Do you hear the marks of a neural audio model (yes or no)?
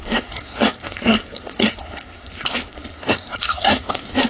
yes